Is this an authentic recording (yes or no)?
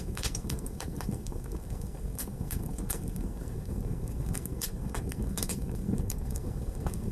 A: no